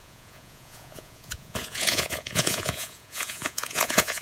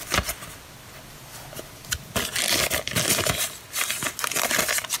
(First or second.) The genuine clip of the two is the second